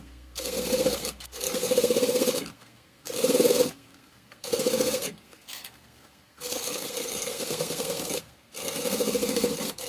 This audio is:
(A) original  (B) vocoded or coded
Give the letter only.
B